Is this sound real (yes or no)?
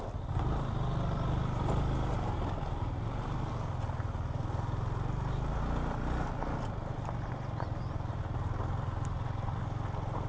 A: yes